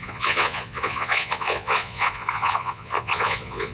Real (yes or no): no